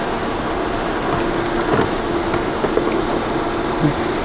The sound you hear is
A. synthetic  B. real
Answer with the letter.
B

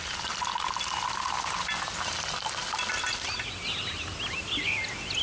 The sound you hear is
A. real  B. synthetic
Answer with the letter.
A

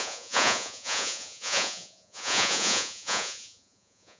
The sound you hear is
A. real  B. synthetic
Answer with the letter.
B